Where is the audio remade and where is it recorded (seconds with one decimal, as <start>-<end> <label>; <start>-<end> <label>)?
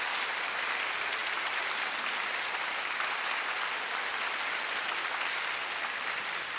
0.0-6.6 recorded